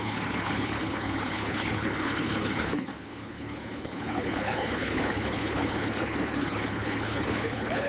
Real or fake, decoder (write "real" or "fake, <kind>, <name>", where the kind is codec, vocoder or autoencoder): fake, codec, HILCodec